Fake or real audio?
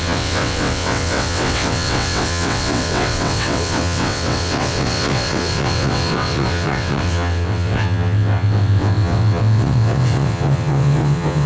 fake